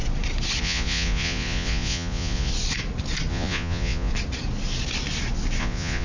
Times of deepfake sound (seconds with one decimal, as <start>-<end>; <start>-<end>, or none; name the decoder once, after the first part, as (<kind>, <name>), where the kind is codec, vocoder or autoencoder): 0.6-2.5 (vocoder, Vocos); 3.3-4.1; 5.6-6.0